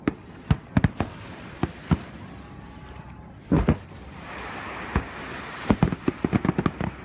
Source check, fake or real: real